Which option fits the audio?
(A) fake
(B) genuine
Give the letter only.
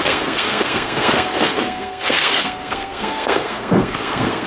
A